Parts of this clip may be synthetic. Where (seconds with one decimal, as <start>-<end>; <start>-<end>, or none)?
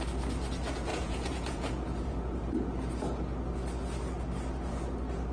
0.9-2.5